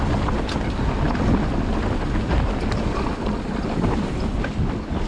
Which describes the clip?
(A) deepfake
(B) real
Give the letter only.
B